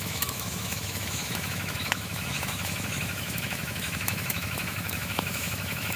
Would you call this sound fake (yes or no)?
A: yes